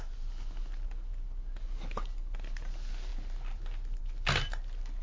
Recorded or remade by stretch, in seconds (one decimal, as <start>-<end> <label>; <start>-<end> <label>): 0.0-5.0 recorded